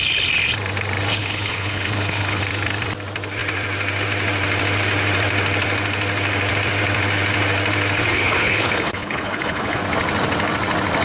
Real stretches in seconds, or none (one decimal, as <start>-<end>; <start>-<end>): 0.0-1.1; 2.4-8.1; 9.8-11.0